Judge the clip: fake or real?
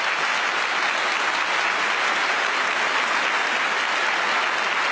real